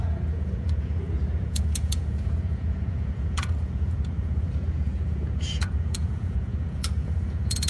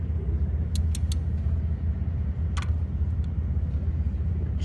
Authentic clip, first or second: second